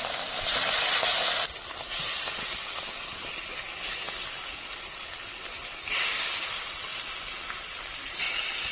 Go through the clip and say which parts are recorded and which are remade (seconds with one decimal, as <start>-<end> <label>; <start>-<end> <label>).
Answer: 0.0-8.7 recorded